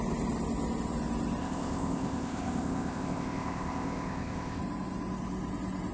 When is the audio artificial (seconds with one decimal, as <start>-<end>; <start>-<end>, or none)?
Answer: 1.4-4.6